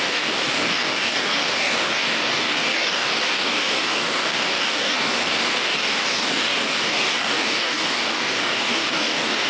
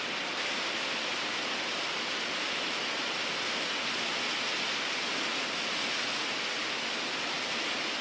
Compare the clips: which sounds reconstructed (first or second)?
first